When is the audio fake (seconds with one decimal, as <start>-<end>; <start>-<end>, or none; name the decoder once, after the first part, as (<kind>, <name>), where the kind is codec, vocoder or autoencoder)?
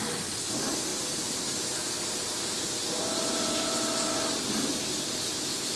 none